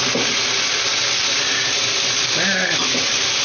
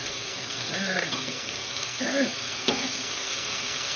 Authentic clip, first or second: first